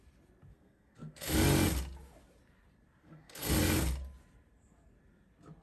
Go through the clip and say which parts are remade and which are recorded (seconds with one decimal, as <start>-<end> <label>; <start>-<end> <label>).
0.0-0.5 recorded; 0.5-1.3 remade; 1.3-3.0 recorded; 3.0-3.5 remade; 3.5-5.6 recorded

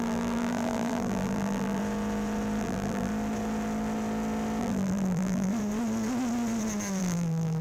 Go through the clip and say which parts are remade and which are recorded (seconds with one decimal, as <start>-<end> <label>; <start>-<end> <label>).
0.0-1.8 remade; 1.8-2.6 recorded; 2.6-3.1 remade; 3.1-4.6 recorded; 4.6-5.5 remade; 5.5-7.0 recorded; 7.0-7.6 remade